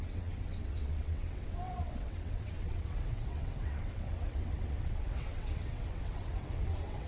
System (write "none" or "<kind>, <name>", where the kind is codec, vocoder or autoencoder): vocoder, WaveNeXt